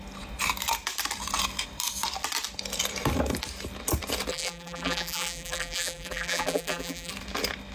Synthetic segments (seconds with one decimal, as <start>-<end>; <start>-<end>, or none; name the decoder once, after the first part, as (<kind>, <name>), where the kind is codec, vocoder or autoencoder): 4.3-7.1 (vocoder, BigVGAN v2)